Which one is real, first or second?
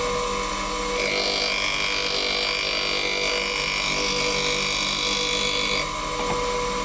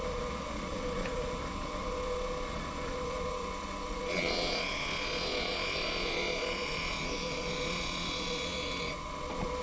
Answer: first